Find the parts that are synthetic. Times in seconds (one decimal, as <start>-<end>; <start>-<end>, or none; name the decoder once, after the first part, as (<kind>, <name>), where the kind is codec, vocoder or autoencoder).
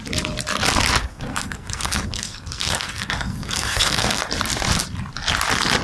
1.0-4.2 (codec, SNAC)